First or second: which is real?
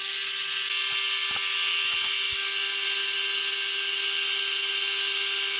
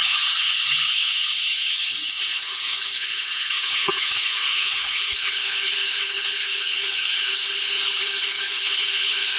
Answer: first